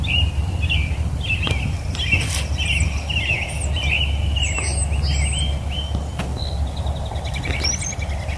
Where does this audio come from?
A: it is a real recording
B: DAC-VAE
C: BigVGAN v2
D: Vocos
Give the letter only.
A